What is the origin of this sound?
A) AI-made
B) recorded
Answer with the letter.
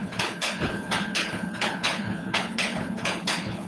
A